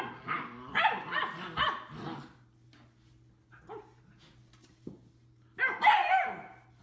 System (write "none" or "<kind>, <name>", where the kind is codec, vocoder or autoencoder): none